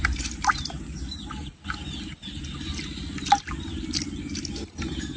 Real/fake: real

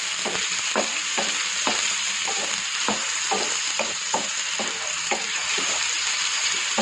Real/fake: fake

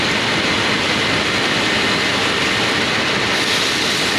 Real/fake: real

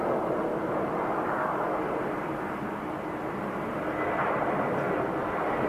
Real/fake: real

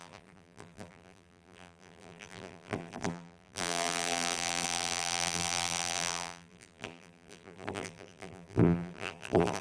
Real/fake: fake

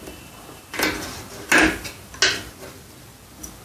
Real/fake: real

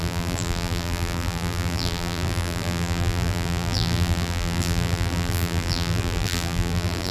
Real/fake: fake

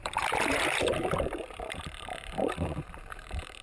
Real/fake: fake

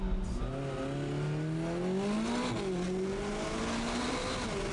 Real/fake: real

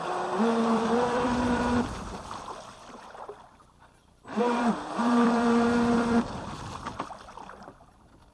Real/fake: fake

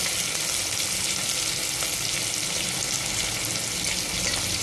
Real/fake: real